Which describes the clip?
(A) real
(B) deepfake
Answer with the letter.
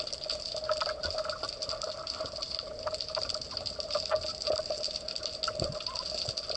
A